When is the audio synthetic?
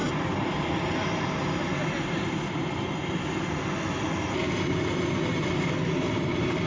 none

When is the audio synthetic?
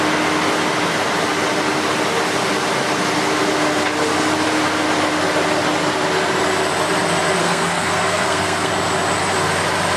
7.4-8.7 (codec, SNAC)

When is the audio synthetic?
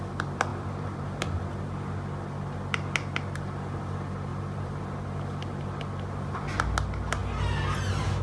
0.5-1.6 (vocoder, BigVGAN v2); 4.3-4.8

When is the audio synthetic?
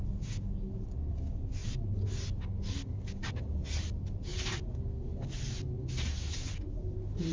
none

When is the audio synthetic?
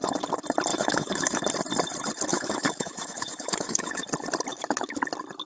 0.7-1.4 (autoencoder, DAC-VAE); 2.3-4.0; 4.5-5.0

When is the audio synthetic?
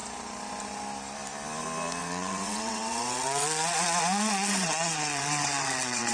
2.0-6.1 (vocoder, WaveNeXt)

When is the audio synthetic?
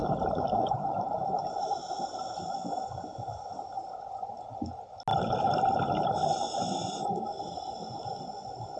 0.0-4.4 (vocoder, BigVGAN v2); 5.1-6.1